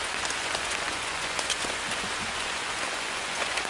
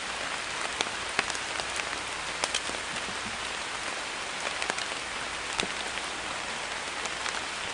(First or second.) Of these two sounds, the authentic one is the second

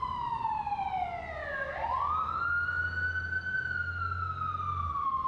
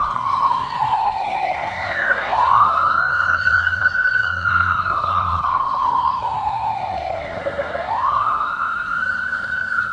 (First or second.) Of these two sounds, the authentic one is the first